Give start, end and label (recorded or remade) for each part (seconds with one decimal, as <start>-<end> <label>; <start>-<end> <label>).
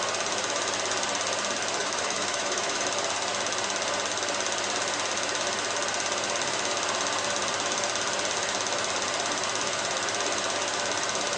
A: 0.0-1.8 recorded; 1.8-2.8 remade; 2.8-11.4 recorded